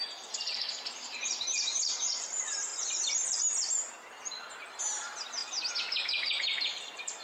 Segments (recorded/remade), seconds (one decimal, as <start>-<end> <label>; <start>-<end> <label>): 0.0-2.7 remade; 2.7-4.8 recorded; 4.8-5.4 remade; 5.4-7.2 recorded